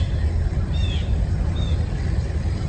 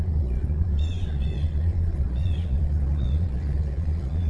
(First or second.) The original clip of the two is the first